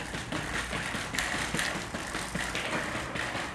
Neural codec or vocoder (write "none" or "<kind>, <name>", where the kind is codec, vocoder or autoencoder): none